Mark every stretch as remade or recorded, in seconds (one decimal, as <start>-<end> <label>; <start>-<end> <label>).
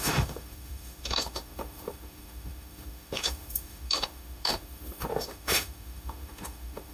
0.0-6.9 remade